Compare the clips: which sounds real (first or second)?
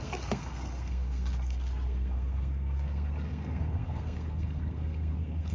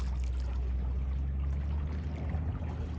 second